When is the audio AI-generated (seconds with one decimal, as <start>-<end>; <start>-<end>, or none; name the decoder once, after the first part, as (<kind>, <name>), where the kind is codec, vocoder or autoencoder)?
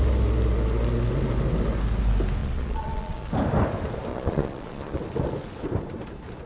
2.4-3.3 (vocoder, Vocos); 4.1-5.0